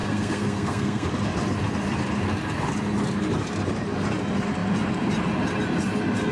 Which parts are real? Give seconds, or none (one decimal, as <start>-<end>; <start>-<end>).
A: 1.1-6.3